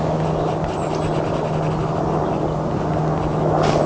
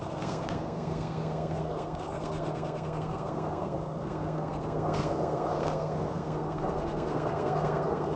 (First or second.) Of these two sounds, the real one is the first